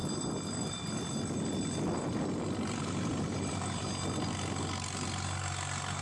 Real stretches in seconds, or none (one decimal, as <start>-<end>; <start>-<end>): 3.6-6.0